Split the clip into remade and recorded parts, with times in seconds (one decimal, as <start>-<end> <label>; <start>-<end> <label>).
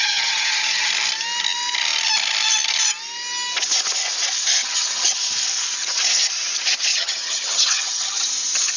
0.0-0.9 remade; 0.9-4.6 recorded; 4.6-5.2 remade; 5.2-6.9 recorded; 6.9-8.3 remade; 8.3-8.8 recorded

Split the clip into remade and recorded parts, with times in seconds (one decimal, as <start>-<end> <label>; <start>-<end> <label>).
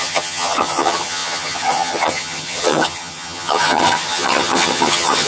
0.0-5.3 remade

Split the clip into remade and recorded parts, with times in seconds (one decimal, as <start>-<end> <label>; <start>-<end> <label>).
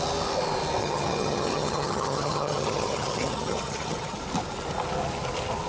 0.0-0.8 recorded; 0.8-4.2 remade; 4.2-5.7 recorded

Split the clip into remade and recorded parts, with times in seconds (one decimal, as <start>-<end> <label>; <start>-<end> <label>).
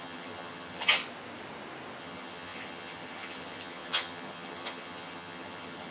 0.0-1.0 remade; 1.0-2.0 recorded; 2.0-5.9 remade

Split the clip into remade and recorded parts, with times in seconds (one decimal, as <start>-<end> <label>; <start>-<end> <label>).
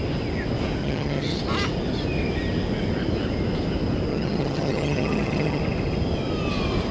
0.0-0.8 recorded; 0.8-1.4 remade; 1.4-4.1 recorded; 4.1-5.6 remade; 5.6-6.9 recorded